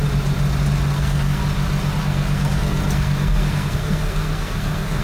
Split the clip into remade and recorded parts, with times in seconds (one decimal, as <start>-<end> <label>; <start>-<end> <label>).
0.0-0.9 recorded; 0.9-1.4 remade; 1.4-2.0 recorded; 2.0-5.0 remade